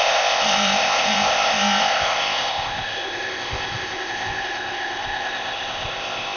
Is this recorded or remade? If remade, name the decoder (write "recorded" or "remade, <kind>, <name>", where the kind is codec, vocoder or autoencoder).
remade, codec, ZipCodec